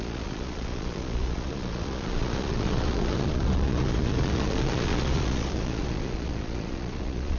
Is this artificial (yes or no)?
yes